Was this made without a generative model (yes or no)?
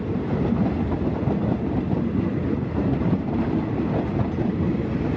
yes